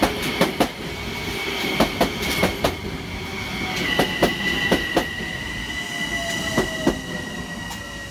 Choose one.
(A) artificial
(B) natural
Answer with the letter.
B